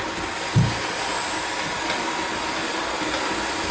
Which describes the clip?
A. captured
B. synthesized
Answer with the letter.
A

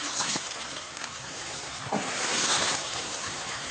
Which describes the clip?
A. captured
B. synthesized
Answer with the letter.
B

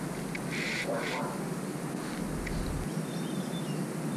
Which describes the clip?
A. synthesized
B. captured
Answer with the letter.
B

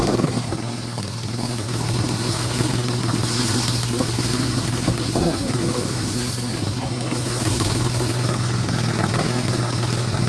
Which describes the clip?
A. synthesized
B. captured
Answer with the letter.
A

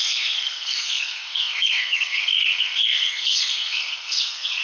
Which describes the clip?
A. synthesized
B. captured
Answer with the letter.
A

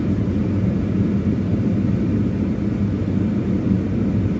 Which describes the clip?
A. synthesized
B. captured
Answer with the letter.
B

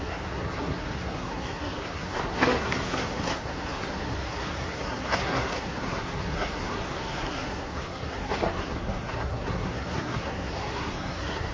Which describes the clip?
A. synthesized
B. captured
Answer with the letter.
A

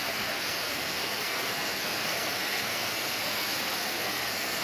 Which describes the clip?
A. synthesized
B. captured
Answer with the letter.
A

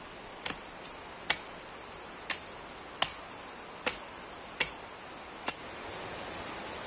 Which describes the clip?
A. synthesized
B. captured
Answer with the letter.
B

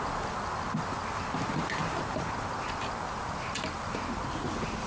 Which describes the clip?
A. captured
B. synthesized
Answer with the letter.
A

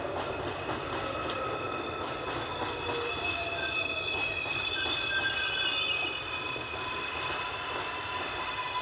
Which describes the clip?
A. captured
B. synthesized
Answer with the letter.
A